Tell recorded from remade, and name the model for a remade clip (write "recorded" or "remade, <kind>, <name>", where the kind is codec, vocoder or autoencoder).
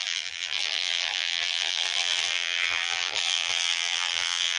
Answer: remade, vocoder, BigVGAN v2